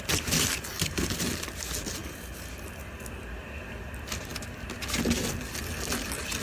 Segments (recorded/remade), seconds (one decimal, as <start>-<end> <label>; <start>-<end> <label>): 0.0-6.4 recorded